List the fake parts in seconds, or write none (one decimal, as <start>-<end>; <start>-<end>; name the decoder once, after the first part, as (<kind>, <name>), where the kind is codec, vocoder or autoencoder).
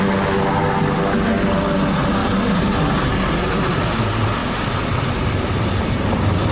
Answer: 2.2-3.8 (vocoder, BigVGAN v2); 4.4-6.5